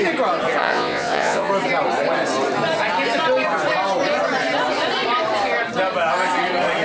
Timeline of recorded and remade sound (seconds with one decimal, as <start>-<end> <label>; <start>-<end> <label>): 0.0-0.6 recorded; 0.6-1.5 remade; 1.5-6.8 recorded